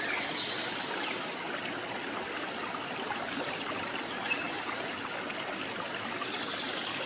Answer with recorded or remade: recorded